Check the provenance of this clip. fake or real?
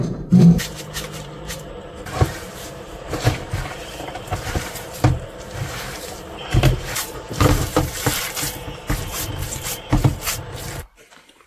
fake